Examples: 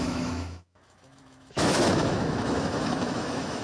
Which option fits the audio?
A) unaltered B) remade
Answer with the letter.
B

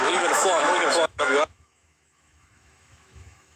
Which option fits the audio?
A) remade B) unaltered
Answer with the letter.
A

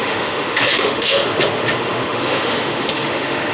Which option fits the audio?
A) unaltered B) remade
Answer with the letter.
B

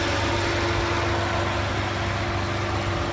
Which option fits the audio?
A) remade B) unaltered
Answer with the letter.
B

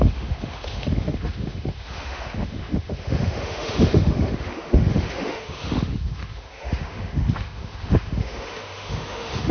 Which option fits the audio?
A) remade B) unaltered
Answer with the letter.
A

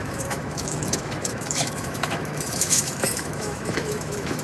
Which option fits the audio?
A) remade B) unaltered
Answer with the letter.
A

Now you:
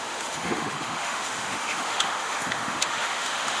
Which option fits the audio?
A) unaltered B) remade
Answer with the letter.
B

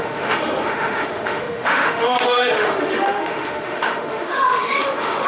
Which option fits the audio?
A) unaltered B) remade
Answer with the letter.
B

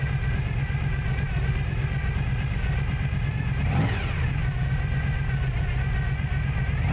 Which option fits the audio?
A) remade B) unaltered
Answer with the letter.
B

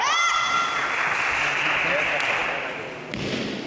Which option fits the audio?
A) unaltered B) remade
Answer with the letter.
A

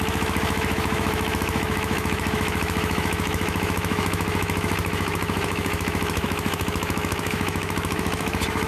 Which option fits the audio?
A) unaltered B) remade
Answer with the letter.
B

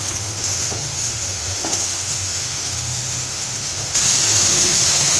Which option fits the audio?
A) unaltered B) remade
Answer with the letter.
B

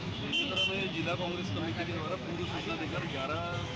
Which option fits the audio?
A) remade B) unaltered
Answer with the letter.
A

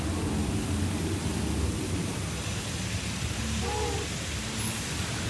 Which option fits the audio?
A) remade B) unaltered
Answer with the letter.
B